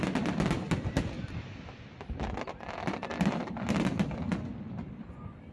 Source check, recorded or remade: recorded